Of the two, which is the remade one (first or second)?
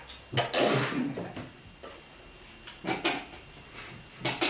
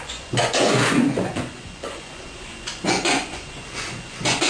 second